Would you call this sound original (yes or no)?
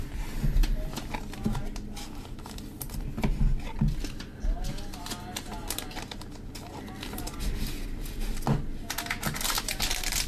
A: yes